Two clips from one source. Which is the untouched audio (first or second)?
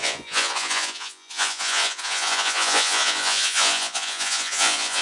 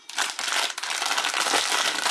second